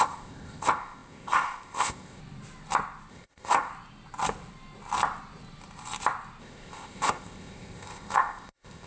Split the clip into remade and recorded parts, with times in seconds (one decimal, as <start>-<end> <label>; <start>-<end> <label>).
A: 0.0-2.2 remade; 2.2-3.1 recorded; 3.1-3.7 remade; 3.7-6.4 recorded; 6.4-8.9 remade

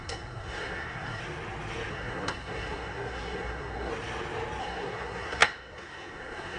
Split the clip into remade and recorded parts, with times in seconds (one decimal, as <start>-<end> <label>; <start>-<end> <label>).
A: 0.0-1.2 remade; 1.2-1.9 recorded; 1.9-3.9 remade; 3.9-4.6 recorded; 4.6-6.6 remade

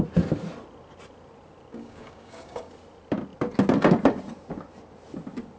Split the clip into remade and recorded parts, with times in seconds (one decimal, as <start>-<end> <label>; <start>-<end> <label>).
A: 0.0-1.7 recorded; 1.7-2.7 remade; 2.7-5.6 recorded

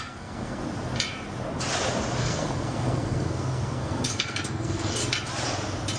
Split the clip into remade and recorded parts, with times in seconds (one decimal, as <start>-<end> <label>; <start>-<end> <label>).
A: 0.0-0.6 remade; 0.6-2.2 recorded; 2.2-5.0 remade; 5.0-6.0 recorded

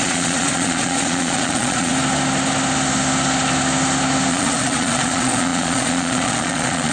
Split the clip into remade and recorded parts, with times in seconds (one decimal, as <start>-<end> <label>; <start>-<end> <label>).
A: 0.0-1.9 remade; 1.9-4.3 recorded; 4.3-6.9 remade